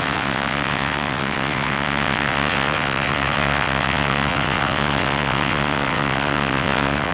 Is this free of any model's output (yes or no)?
no